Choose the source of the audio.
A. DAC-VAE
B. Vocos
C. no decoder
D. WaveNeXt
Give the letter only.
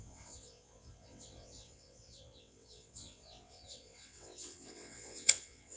D